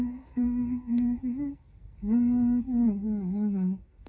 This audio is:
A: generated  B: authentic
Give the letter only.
A